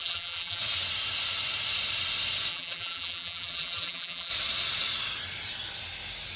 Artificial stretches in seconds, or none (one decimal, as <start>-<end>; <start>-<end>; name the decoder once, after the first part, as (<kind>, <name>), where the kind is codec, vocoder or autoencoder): 0.0-0.6 (vocoder, BigVGAN v2); 2.5-4.3